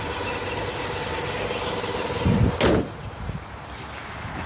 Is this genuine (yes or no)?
yes